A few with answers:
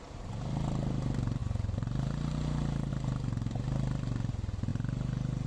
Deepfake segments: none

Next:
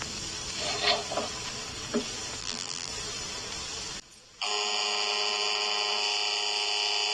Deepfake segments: 2.4-2.9